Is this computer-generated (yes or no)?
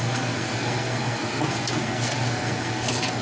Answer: yes